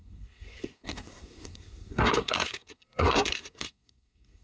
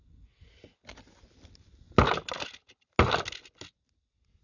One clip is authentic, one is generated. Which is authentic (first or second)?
second